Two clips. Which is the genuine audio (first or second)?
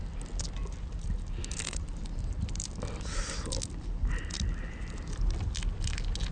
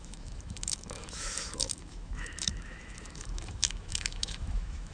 first